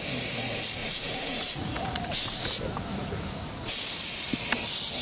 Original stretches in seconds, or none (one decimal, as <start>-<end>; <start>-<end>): 0.0-0.8; 2.5-2.9; 3.7-5.0